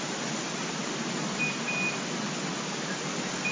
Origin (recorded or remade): recorded